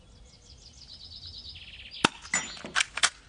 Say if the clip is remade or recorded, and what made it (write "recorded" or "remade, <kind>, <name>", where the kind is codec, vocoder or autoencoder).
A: recorded